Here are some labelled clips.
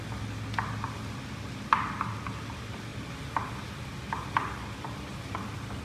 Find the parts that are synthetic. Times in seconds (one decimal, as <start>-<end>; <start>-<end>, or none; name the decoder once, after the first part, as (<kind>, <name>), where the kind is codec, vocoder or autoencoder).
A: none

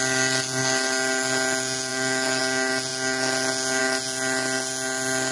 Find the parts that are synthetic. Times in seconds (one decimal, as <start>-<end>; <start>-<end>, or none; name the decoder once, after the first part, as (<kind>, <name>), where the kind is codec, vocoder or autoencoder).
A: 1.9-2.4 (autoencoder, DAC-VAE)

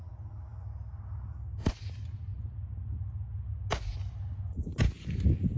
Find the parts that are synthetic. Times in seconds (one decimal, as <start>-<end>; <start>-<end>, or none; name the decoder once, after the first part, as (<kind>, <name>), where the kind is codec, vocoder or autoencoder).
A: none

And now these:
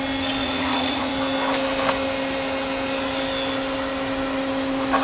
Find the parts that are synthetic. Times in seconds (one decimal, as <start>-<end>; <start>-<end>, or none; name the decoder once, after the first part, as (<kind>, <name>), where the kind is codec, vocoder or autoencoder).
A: 0.4-1.1 (vocoder, Vocos)

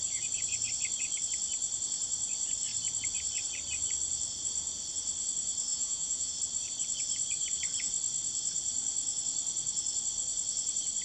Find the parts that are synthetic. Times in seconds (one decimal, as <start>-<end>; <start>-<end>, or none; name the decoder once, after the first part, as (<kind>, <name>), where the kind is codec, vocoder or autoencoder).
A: 5.7-6.3 (vocoder, Vocos)

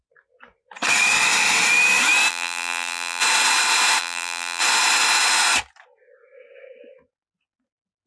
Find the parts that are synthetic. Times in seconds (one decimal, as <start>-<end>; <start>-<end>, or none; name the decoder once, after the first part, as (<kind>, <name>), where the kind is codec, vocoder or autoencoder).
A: 2.3-3.2 (vocoder, BigVGAN v2); 4.0-4.6